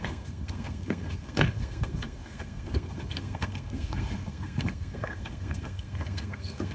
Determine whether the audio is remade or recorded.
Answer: remade